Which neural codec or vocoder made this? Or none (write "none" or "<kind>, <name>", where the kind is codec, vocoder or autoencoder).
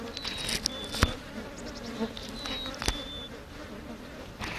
none